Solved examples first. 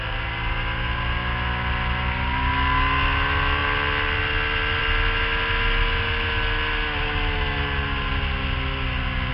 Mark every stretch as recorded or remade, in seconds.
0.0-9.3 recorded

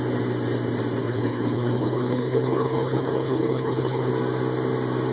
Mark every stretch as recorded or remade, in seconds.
0.0-1.0 recorded; 1.0-4.1 remade; 4.1-5.1 recorded

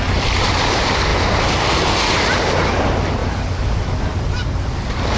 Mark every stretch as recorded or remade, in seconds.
0.0-1.1 recorded; 1.1-1.8 remade; 1.8-3.2 recorded; 3.2-4.7 remade; 4.7-5.2 recorded

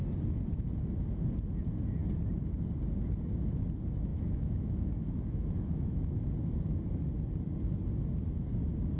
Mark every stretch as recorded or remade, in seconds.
0.0-4.1 recorded; 4.1-6.3 remade; 6.3-9.0 recorded

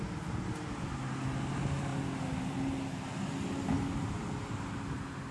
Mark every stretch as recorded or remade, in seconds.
0.0-5.3 recorded

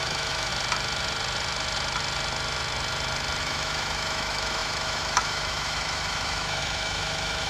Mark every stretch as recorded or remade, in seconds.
0.0-0.5 remade; 0.5-3.4 recorded; 3.4-7.5 remade

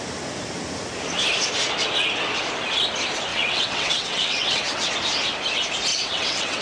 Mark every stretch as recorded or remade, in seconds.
0.0-3.3 recorded; 3.3-4.9 remade; 4.9-5.9 recorded; 5.9-6.6 remade

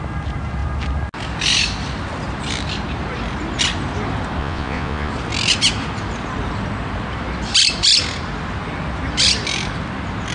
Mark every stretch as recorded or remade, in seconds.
0.0-4.4 recorded; 4.4-5.1 remade; 5.1-10.3 recorded